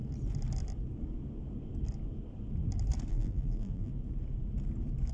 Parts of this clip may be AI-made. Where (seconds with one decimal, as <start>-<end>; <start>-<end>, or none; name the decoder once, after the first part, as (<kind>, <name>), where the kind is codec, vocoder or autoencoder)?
3.1-3.9 (vocoder, BigVGAN v2)